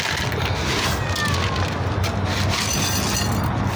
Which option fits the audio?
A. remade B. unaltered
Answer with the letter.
B